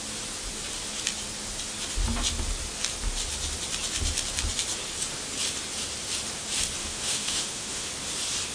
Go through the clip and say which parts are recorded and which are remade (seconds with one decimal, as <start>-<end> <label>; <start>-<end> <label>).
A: 0.0-6.8 recorded; 6.8-7.9 remade; 7.9-8.5 recorded